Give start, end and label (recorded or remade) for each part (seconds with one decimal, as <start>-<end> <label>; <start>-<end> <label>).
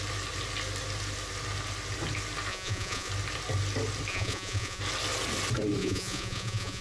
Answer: 0.0-2.5 recorded; 2.5-3.1 remade; 3.1-4.1 recorded; 4.1-4.8 remade; 4.8-5.8 recorded; 5.8-6.8 remade